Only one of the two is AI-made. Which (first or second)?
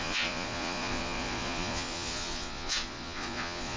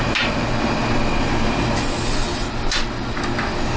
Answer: first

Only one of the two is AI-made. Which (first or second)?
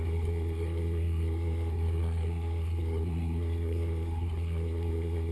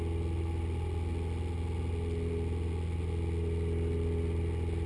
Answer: first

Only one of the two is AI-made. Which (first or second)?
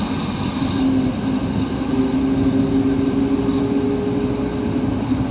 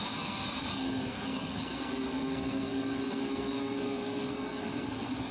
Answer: second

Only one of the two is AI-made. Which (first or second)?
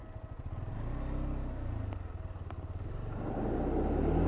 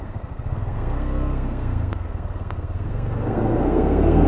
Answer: second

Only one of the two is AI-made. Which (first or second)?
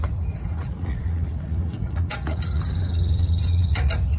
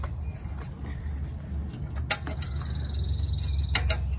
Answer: first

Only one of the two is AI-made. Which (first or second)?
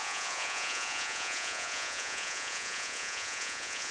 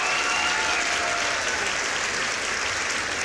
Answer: first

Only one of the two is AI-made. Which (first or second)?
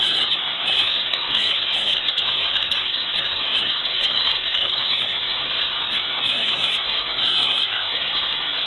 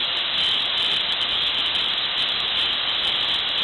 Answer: first